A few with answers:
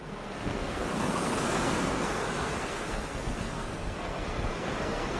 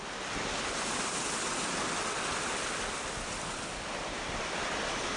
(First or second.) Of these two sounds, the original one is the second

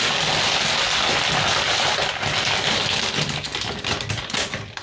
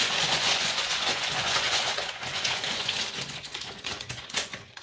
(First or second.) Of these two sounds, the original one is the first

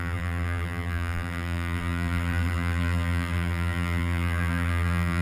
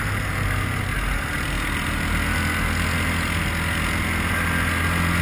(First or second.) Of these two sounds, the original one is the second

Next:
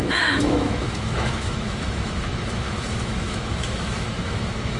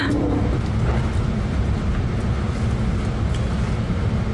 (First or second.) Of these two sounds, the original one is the second